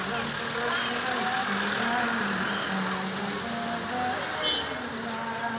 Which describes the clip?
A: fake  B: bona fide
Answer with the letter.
B